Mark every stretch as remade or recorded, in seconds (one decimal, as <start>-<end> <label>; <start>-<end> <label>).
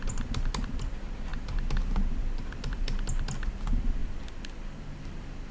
0.0-5.5 recorded